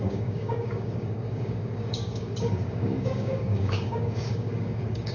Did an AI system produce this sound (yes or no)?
yes